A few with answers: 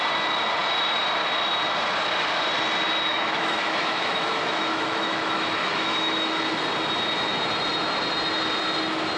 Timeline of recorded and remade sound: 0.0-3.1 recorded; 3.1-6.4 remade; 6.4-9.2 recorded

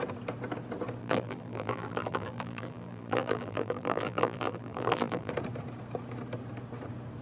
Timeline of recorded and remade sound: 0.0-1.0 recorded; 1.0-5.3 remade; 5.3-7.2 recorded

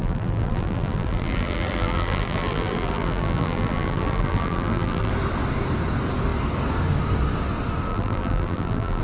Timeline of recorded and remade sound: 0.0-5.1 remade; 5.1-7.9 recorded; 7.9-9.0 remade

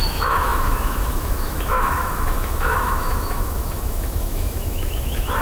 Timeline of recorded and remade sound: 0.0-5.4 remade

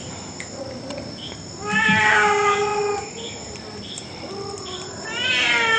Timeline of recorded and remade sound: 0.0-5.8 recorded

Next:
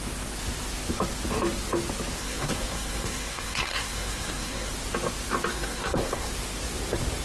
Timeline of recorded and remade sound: 0.0-2.2 recorded; 2.2-4.7 remade; 4.7-5.5 recorded; 5.5-6.3 remade; 6.3-7.2 recorded